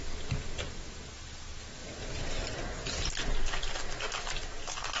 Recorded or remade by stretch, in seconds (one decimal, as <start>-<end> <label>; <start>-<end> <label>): 0.0-1.8 recorded; 1.8-2.5 remade; 2.5-5.0 recorded

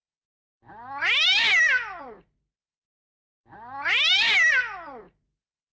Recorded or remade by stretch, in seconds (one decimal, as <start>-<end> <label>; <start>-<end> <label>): 0.0-2.0 recorded; 2.0-2.6 remade; 2.6-5.8 recorded

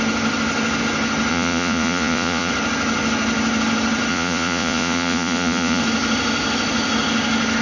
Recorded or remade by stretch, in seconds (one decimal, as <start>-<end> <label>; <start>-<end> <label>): 0.0-1.3 recorded; 1.3-2.5 remade; 2.5-4.1 recorded; 4.1-5.8 remade; 5.8-7.6 recorded

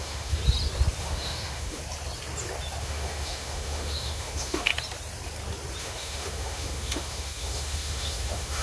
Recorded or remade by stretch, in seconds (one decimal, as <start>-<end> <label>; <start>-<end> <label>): 0.0-0.4 remade; 0.4-1.0 recorded; 1.0-1.8 remade; 1.8-2.8 recorded; 2.8-4.7 remade; 4.7-5.8 recorded; 5.8-8.6 remade

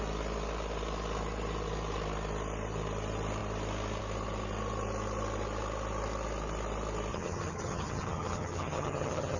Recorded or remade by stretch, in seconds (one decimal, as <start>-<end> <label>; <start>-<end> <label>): 0.0-7.1 recorded; 7.1-9.4 remade